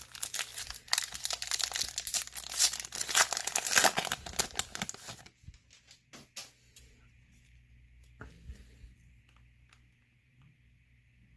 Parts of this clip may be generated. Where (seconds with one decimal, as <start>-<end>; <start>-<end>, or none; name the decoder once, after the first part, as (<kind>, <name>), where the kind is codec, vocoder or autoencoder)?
none